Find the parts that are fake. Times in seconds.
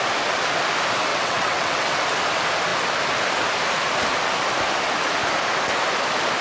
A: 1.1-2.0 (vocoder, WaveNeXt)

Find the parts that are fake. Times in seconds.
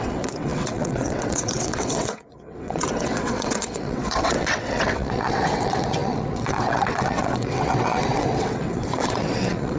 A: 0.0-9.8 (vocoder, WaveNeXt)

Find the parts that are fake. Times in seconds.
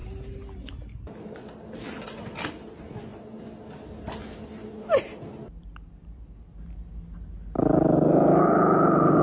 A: none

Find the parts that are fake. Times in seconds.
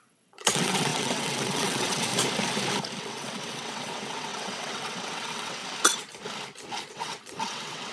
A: 0.0-2.1 (vocoder, WaveNeXt); 3.0-5.6; 6.9-7.9